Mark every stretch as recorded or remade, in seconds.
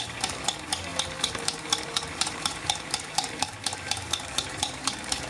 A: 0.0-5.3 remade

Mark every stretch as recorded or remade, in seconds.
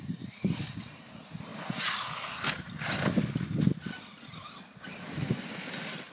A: 0.0-6.1 recorded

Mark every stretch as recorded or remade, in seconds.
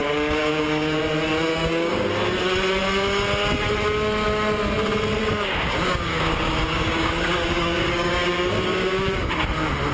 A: 0.0-1.0 remade; 1.0-1.5 recorded; 1.5-2.1 remade; 2.1-5.2 recorded; 5.2-9.3 remade; 9.3-9.9 recorded